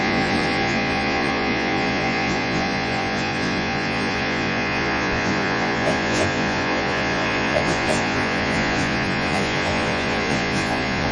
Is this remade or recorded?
remade